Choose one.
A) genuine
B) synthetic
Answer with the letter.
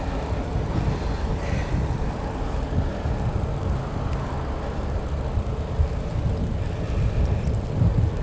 A